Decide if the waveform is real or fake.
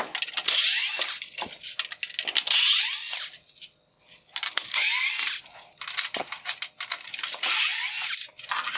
real